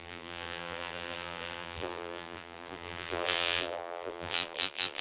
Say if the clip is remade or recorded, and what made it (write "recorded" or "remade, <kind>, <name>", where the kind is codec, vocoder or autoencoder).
remade, vocoder, BigVGAN v2